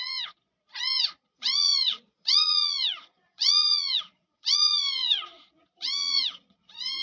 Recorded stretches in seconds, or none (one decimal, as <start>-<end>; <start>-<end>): none